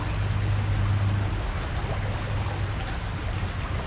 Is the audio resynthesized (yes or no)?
no